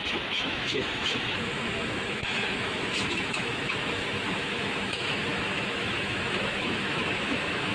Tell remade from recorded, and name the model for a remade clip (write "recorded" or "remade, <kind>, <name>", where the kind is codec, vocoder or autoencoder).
remade, autoencoder, DAC-VAE